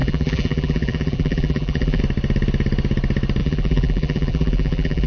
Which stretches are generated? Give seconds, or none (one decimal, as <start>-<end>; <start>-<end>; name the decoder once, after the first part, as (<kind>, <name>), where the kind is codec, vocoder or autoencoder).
0.0-2.0 (vocoder, BigVGAN v2); 3.4-5.1